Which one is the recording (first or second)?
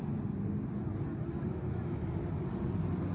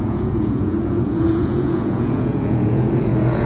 first